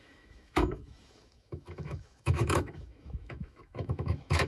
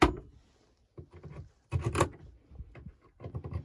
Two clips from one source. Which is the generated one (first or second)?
first